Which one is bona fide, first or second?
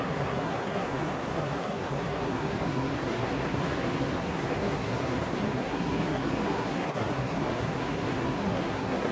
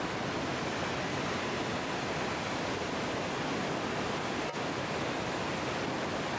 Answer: second